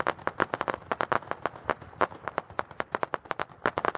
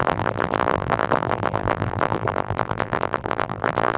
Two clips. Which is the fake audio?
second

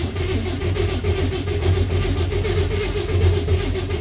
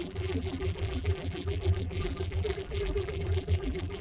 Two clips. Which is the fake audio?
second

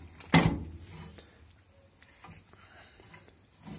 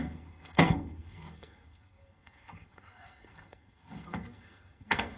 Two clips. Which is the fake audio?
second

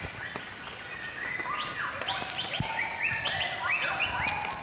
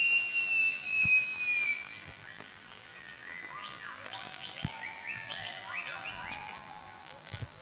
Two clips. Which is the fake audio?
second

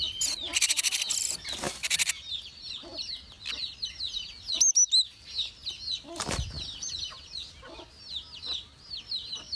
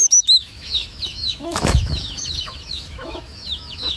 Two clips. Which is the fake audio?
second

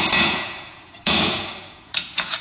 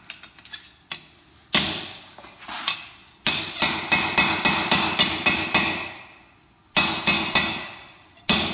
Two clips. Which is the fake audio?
first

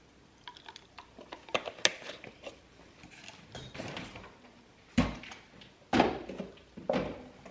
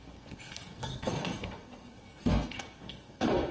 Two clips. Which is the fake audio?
second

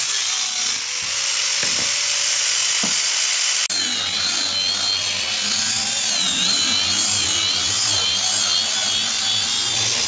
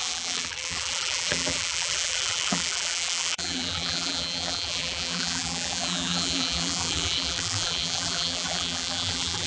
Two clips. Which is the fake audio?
second